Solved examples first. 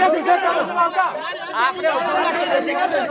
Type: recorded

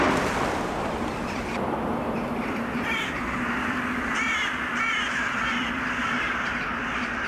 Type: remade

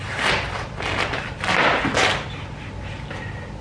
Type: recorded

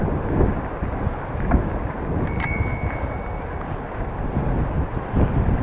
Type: recorded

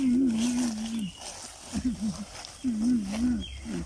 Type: recorded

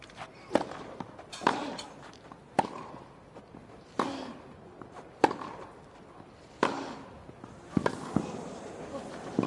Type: remade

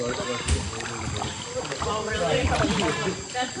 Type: recorded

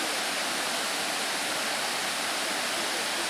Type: recorded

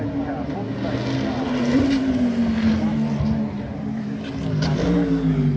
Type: recorded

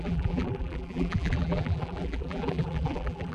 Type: remade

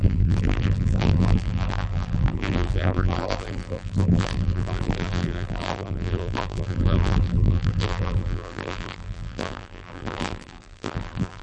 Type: remade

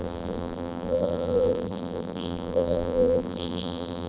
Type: remade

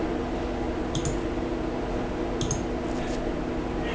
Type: recorded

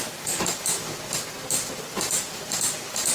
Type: recorded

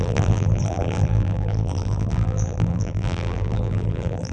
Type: remade